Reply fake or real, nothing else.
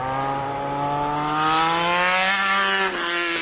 real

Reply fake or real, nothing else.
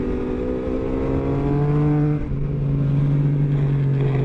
real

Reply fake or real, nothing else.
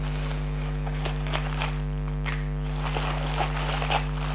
real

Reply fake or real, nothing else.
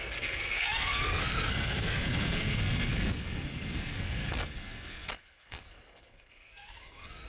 fake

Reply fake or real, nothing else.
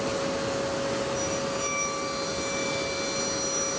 real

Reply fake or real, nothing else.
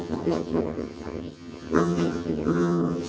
fake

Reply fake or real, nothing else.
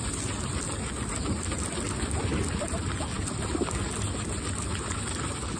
real